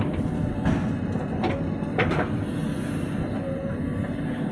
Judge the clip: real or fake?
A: real